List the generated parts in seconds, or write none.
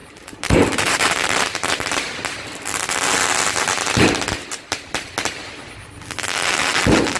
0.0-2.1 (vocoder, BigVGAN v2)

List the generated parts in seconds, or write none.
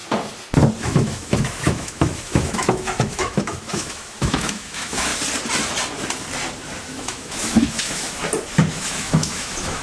0.8-5.1 (autoencoder, DAC-VAE); 6.9-8.2; 8.7-9.8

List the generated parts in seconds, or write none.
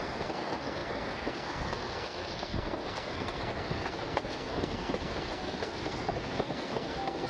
0.0-7.3 (codec, SNAC)